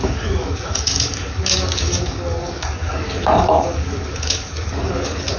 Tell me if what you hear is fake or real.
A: fake